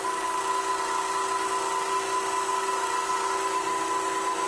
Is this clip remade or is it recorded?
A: recorded